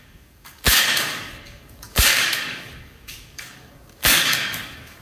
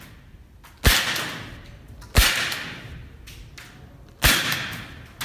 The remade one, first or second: first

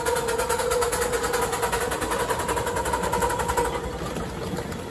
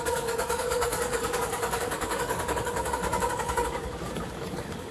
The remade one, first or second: second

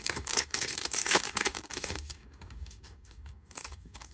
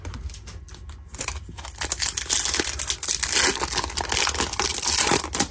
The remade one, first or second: first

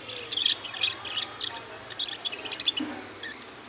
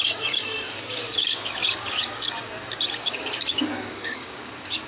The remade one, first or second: second